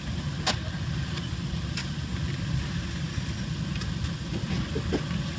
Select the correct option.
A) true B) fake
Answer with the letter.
A